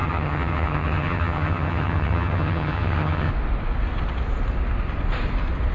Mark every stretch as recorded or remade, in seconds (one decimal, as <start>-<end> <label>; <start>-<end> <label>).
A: 0.0-3.3 remade; 3.3-5.7 recorded

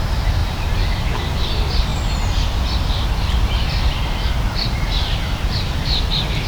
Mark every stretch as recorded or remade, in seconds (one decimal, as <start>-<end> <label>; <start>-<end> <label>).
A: 0.0-6.5 recorded

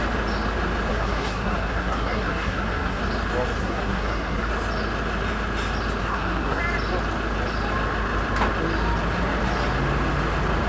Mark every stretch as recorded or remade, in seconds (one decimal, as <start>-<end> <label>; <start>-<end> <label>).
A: 0.0-0.9 recorded; 0.9-3.0 remade; 3.0-3.6 recorded; 3.6-4.5 remade; 4.5-6.0 recorded; 6.0-6.6 remade; 6.6-10.7 recorded